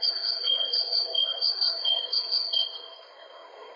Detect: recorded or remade remade